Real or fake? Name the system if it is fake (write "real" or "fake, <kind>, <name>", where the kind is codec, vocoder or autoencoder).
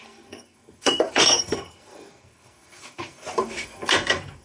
fake, codec, SNAC